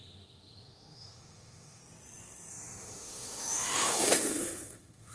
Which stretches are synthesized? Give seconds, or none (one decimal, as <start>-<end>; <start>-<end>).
0.0-1.8; 2.5-5.1